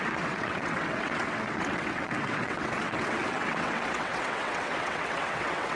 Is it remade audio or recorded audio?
remade